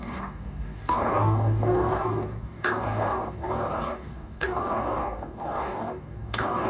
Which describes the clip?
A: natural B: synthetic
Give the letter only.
B